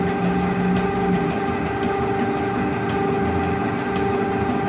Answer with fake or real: real